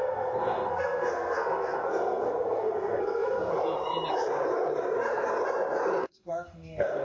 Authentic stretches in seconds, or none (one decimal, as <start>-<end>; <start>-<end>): 3.5-6.0